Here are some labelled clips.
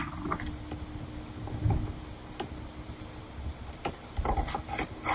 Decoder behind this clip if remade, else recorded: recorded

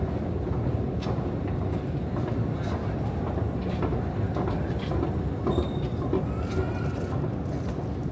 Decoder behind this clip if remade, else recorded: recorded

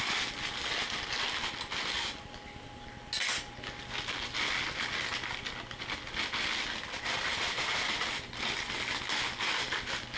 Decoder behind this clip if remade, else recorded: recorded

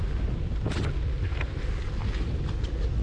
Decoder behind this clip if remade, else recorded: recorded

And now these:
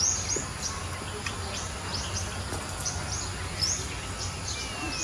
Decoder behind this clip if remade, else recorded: recorded